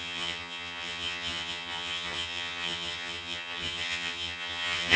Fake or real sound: fake